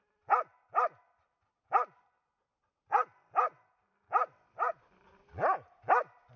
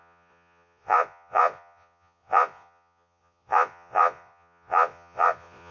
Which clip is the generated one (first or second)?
second